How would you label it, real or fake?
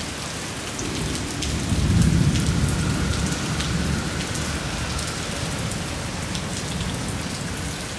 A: real